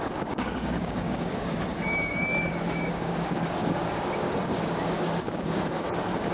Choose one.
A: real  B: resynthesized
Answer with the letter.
B